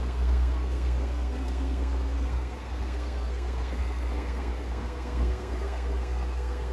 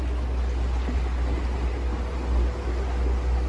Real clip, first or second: second